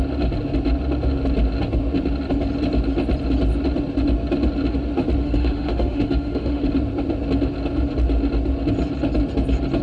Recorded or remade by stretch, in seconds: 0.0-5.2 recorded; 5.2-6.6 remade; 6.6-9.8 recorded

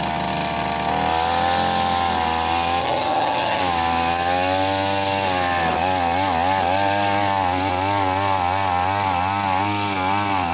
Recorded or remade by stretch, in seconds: 0.0-2.8 recorded; 2.8-3.6 remade; 3.6-10.5 recorded

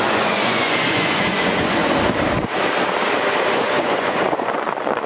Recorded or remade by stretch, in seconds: 0.0-1.8 remade; 1.8-3.5 recorded; 3.5-5.1 remade